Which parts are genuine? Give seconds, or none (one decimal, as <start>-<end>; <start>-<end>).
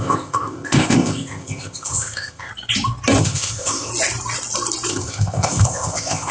2.5-3.2; 3.9-4.9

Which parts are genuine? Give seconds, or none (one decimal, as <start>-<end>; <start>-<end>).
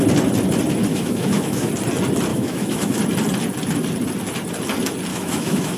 0.0-0.9; 1.7-2.3; 3.0-5.1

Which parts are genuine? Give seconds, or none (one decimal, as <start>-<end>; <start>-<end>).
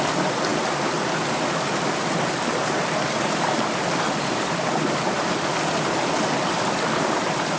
0.0-7.6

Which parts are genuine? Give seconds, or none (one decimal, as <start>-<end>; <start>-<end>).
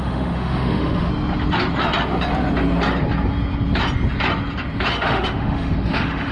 1.1-4.9